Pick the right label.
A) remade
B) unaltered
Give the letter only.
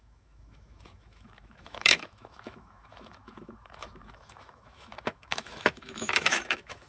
A